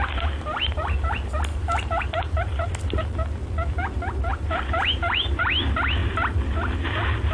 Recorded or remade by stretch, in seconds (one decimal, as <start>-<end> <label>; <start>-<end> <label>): 0.0-1.5 recorded; 1.5-2.7 remade; 2.7-4.3 recorded; 4.3-5.5 remade; 5.5-7.3 recorded

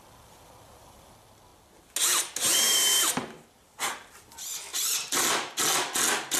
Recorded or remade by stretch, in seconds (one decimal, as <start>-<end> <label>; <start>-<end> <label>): 0.0-4.7 recorded; 4.7-5.7 remade; 5.7-6.4 recorded